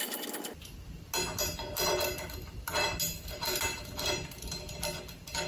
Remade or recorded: recorded